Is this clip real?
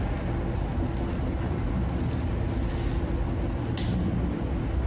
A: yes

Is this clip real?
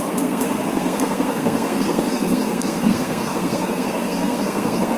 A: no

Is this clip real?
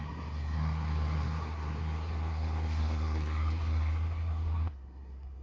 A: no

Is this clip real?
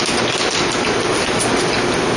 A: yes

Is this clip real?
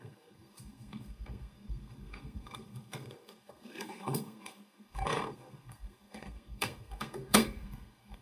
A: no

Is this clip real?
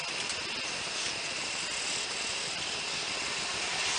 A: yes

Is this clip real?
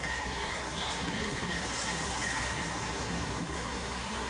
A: no